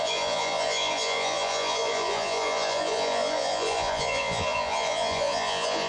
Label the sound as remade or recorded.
remade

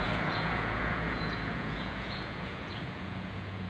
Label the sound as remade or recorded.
remade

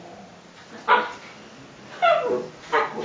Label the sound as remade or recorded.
recorded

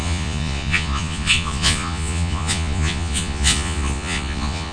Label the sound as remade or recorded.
remade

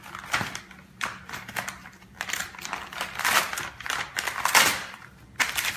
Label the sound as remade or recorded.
recorded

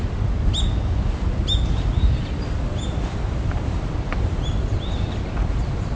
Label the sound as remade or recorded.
recorded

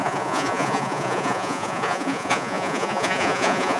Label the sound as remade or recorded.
remade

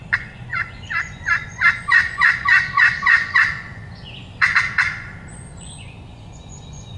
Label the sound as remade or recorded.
remade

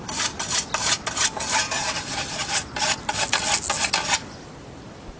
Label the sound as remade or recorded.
recorded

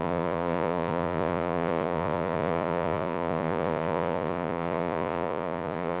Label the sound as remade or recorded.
remade